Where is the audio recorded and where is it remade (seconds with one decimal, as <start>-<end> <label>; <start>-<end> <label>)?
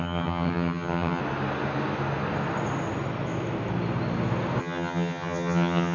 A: 0.0-1.2 remade; 1.2-4.6 recorded; 4.6-5.9 remade